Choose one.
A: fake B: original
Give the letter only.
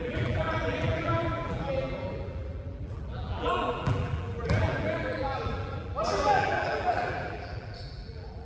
A